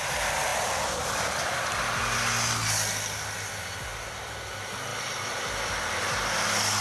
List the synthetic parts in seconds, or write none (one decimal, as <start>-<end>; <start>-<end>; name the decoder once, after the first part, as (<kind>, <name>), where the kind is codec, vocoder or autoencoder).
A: 0.5-1.6 (vocoder, BigVGAN v2); 3.9-4.5; 4.9-5.7